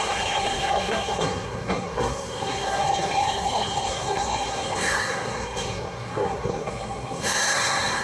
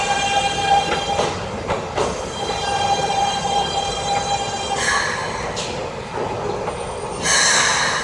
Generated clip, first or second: first